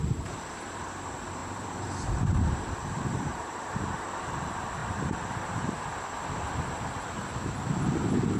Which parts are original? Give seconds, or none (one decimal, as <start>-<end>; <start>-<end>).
0.0-1.4; 1.9-3.3; 4.1-4.8; 5.4-8.4